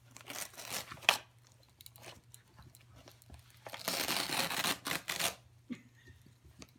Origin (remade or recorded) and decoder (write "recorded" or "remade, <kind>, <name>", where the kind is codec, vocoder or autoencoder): recorded